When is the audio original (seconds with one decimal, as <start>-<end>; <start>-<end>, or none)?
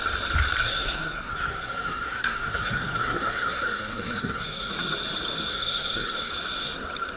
0.0-0.6; 4.7-5.5; 6.3-7.2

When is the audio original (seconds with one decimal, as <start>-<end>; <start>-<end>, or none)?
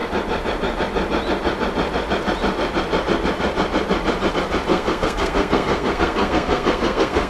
0.0-4.7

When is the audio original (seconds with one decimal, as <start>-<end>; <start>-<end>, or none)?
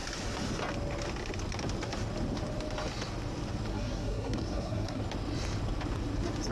0.0-3.7; 5.0-6.5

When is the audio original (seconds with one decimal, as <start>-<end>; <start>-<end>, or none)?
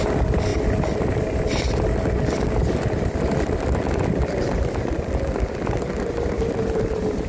0.0-7.3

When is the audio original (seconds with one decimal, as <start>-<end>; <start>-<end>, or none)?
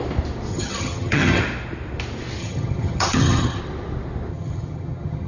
0.0-0.5; 1.4-2.4; 3.6-4.3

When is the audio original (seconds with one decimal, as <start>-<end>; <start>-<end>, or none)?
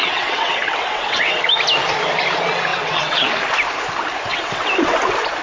1.4-2.7; 3.4-4.3; 5.0-5.4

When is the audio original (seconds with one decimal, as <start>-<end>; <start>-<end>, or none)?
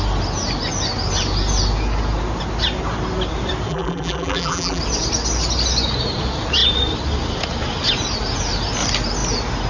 0.0-3.7; 4.8-9.7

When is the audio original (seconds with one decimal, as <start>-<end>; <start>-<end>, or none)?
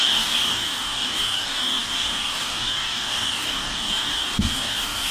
none